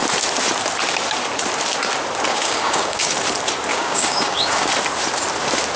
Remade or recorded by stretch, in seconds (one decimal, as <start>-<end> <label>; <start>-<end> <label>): 0.0-2.3 recorded; 2.3-3.1 remade; 3.1-3.7 recorded; 3.7-4.7 remade; 4.7-5.8 recorded